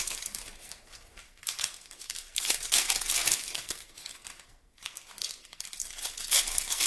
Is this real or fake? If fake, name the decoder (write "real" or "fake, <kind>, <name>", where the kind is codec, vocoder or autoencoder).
fake, codec, SNAC